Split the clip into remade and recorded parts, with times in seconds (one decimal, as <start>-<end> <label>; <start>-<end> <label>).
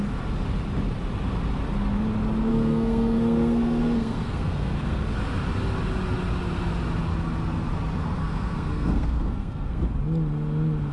0.0-2.5 recorded; 2.5-5.0 remade; 5.0-8.2 recorded; 8.2-9.8 remade; 9.8-10.9 recorded